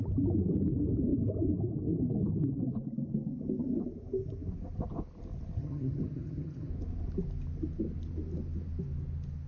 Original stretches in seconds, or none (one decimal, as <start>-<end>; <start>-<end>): 0.0-5.6; 6.7-9.5

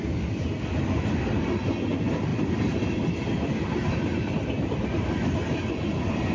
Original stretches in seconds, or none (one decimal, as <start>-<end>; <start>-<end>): 0.0-6.3

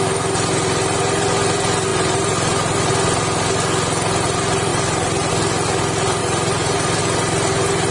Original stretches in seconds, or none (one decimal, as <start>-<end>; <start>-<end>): 0.0-1.9; 2.9-4.7; 5.3-6.2; 7.0-7.9